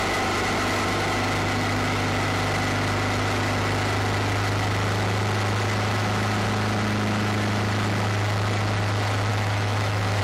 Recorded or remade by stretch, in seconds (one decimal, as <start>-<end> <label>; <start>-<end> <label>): 0.0-9.3 recorded; 9.3-10.2 remade

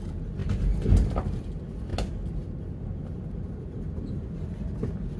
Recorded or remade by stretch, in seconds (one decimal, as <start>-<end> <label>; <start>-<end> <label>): 0.0-5.2 recorded